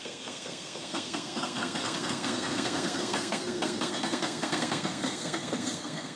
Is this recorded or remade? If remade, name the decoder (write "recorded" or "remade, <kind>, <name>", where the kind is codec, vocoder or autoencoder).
remade, codec, SNAC